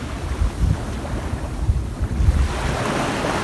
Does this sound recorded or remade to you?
recorded